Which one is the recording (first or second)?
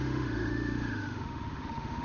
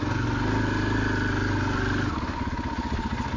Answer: second